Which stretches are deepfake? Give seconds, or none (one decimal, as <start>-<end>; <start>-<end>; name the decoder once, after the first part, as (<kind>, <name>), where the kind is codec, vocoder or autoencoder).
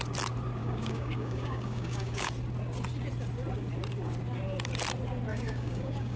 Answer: 0.6-2.3 (codec, DAC); 5.3-6.2